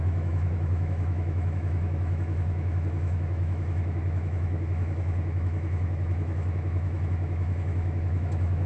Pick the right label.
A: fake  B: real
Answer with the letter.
A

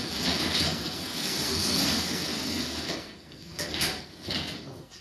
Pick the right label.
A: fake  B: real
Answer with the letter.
A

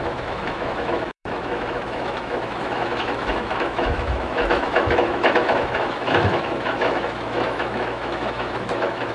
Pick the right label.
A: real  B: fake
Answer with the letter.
B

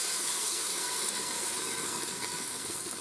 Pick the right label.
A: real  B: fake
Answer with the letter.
B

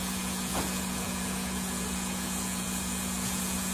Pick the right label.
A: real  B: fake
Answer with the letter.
B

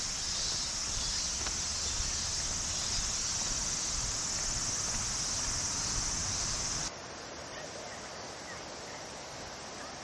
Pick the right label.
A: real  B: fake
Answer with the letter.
A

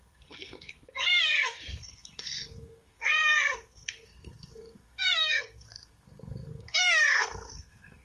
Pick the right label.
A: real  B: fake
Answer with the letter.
B